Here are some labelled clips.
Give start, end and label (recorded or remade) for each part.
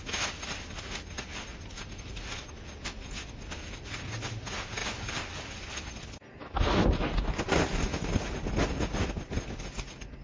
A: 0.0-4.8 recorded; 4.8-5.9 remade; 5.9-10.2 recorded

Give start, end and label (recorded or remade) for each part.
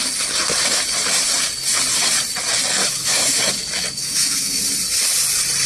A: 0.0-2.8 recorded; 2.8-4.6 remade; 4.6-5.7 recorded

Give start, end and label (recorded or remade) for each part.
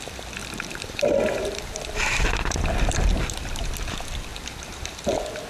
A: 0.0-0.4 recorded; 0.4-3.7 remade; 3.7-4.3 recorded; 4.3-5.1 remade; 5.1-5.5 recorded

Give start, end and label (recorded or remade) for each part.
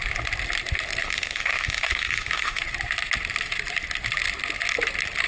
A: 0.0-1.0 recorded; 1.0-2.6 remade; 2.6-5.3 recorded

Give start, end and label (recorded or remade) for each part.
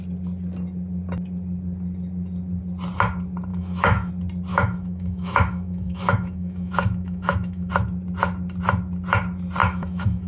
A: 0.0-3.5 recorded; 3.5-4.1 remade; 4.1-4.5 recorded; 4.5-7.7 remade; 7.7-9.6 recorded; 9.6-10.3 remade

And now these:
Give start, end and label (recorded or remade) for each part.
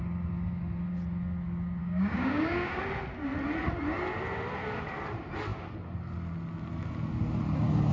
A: 0.0-1.8 recorded; 1.8-2.8 remade; 2.8-7.9 recorded